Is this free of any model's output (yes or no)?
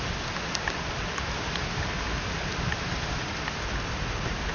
yes